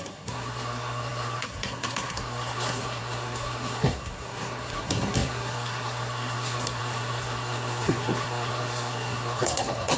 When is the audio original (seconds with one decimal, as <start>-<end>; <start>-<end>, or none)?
none